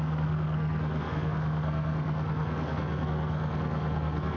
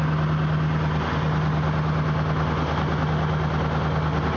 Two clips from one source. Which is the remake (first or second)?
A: first